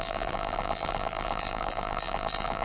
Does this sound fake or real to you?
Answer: fake